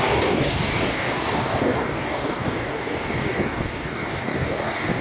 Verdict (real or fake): fake